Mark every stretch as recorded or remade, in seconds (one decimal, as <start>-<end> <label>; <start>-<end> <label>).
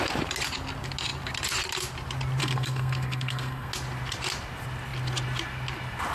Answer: 0.0-2.4 recorded; 2.4-3.7 remade; 3.7-6.1 recorded